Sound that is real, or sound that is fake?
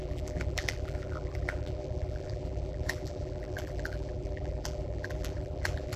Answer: fake